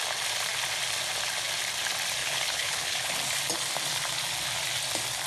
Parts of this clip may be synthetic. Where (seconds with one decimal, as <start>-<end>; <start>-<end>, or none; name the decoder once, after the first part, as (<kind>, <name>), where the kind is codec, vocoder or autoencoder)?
2.2-3.1 (codec, HILCodec)